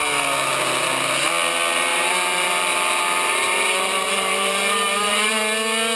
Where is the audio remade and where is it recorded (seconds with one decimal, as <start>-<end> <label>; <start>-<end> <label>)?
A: 0.0-1.9 recorded; 1.9-5.3 remade; 5.3-6.0 recorded